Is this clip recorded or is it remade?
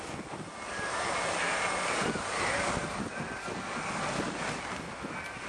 recorded